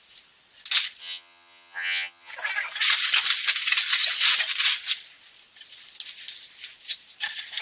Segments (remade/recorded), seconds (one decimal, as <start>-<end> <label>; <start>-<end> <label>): 0.0-1.0 recorded; 1.0-2.3 remade; 2.3-7.6 recorded